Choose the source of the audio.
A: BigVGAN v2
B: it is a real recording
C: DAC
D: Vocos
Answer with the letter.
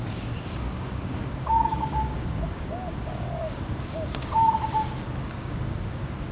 C